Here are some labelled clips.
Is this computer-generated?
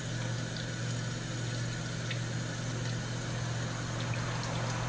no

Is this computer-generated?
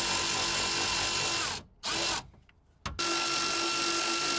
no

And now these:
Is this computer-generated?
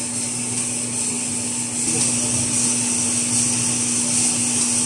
no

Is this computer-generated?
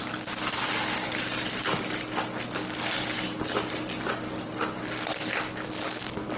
no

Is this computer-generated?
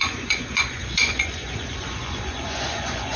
yes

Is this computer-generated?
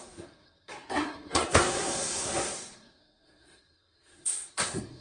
yes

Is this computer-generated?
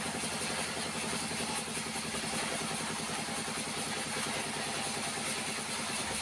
no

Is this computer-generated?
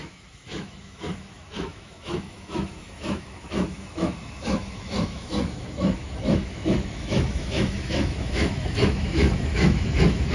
yes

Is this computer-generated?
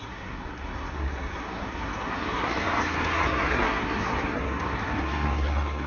yes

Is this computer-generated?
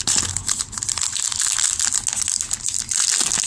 no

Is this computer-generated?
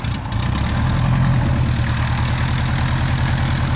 no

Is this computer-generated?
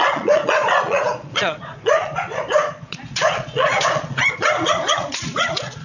yes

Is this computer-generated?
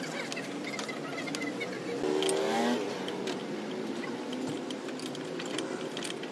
no